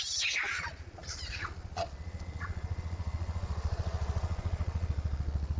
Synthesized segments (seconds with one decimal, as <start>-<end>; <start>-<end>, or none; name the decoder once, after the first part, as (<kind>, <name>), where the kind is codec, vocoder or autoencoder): 0.0-5.6 (vocoder, Vocos)